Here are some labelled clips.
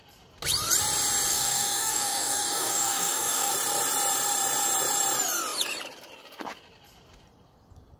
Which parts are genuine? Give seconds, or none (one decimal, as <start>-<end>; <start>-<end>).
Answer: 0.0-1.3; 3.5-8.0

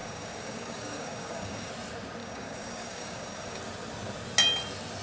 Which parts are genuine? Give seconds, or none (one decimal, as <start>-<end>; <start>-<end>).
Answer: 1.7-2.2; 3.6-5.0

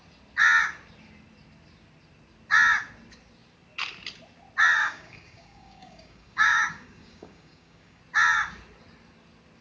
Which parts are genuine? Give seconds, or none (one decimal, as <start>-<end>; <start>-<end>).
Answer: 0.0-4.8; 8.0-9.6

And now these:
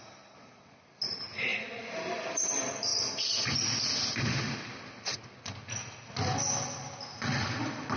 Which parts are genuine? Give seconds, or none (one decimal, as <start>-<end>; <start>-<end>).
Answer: 0.0-8.0